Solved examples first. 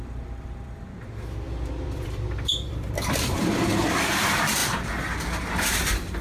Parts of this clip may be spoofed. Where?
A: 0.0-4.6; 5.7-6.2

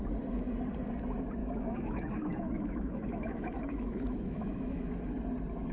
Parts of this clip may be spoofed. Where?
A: 1.4-4.8

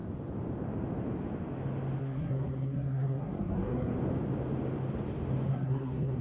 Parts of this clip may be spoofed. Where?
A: 2.0-3.9; 5.5-6.2

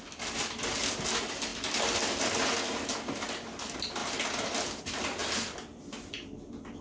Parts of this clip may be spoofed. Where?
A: 5.2-5.8